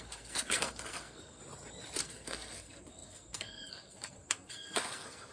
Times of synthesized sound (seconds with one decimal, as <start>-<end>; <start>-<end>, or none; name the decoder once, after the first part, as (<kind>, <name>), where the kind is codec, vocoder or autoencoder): 0.0-1.4 (codec, SNAC); 2.0-5.3